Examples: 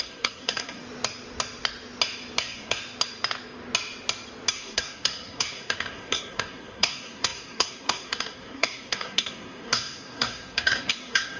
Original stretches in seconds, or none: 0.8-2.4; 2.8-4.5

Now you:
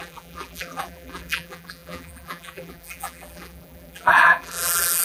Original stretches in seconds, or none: none

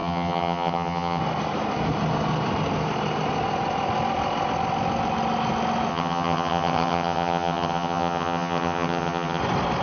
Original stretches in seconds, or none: 1.2-5.9; 9.4-9.8

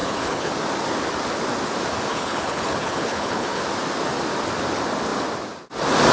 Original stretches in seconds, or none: 0.5-2.1; 3.6-6.1

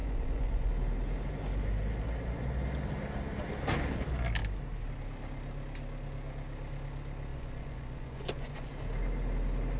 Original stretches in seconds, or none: 0.7-7.3; 8.7-9.8

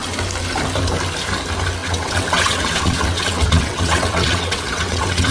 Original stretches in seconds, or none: 0.0-1.8